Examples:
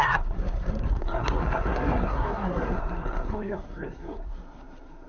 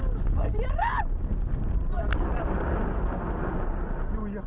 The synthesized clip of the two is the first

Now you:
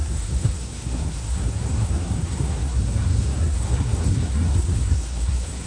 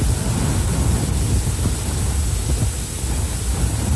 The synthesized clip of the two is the first